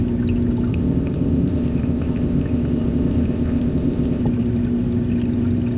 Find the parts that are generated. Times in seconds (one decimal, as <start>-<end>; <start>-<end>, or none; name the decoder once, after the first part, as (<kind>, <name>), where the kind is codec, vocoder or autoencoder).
0.7-4.2 (codec, ZipCodec)